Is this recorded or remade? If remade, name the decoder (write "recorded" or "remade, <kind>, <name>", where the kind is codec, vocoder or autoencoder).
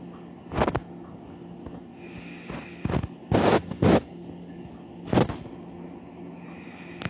recorded